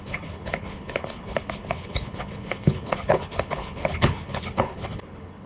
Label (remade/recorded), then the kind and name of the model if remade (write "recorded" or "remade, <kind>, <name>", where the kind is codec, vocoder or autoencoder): remade, codec, HILCodec